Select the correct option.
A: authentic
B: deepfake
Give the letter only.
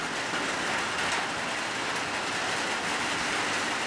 A